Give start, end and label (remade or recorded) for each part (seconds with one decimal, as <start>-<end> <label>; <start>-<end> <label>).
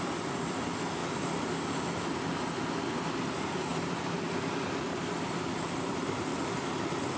0.0-1.0 remade; 1.0-2.6 recorded; 2.6-6.3 remade; 6.3-7.2 recorded